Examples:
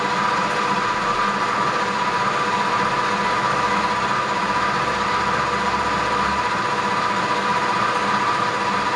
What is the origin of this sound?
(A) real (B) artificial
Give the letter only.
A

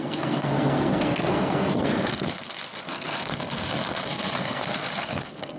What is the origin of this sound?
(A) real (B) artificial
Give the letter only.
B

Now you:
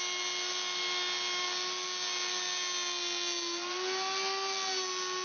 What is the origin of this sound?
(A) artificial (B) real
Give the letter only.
B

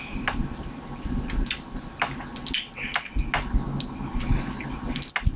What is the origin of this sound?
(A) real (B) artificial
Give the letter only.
A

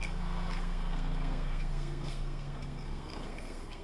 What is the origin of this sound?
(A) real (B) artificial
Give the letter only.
B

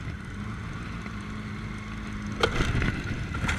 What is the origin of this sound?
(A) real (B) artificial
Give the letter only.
A